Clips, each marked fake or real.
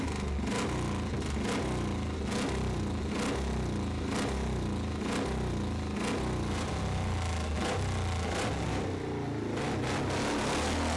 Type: real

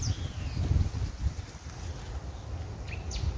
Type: real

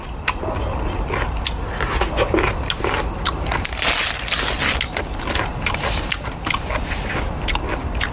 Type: real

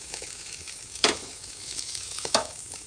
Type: fake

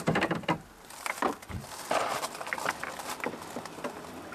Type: real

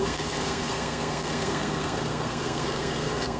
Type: fake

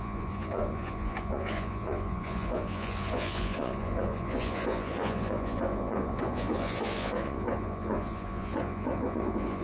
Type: fake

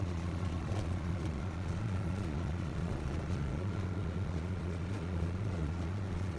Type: fake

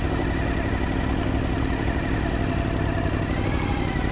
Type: real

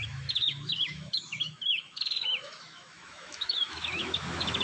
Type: fake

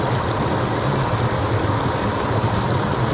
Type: real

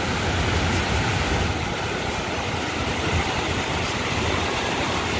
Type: real